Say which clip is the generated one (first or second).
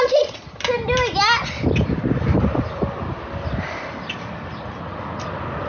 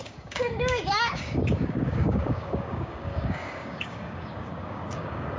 second